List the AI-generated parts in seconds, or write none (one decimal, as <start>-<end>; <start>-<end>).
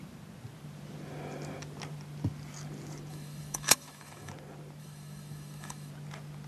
3.1-4.3; 4.8-5.9